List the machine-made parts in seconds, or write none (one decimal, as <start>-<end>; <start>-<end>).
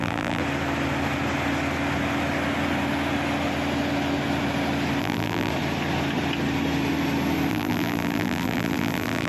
0.0-0.4; 5.0-5.5; 7.5-9.3